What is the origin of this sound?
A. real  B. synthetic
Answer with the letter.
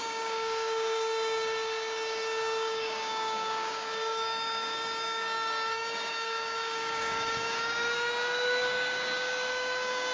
B